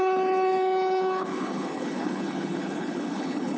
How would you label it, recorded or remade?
remade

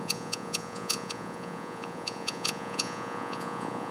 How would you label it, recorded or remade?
remade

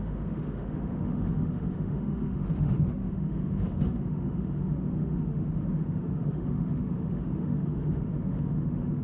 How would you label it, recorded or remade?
remade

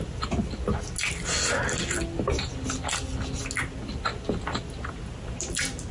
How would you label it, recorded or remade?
recorded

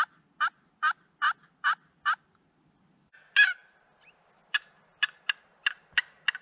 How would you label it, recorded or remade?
recorded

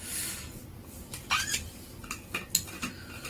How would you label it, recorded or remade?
recorded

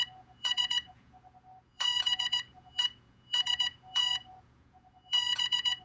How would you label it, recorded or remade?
remade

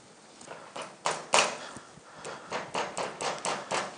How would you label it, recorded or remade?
recorded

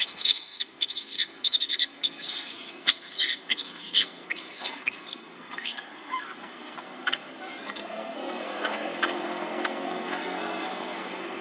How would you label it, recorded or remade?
remade